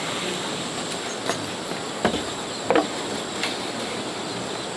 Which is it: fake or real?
real